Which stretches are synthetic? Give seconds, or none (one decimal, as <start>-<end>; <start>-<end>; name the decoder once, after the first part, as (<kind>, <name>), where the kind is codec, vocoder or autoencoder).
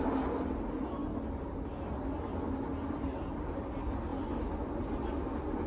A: none